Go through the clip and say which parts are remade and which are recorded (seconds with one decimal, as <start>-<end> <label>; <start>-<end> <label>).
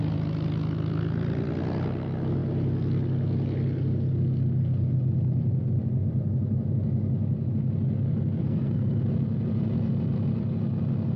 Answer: 0.0-8.4 recorded; 8.4-9.0 remade; 9.0-11.2 recorded